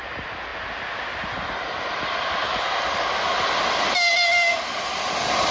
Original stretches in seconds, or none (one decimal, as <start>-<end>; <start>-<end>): 0.0-5.5